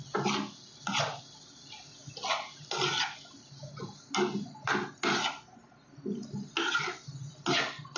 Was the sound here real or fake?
real